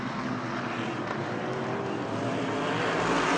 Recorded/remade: recorded